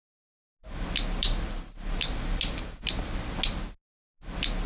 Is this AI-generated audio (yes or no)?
no